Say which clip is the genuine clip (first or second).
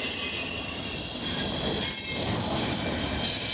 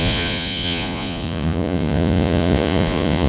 first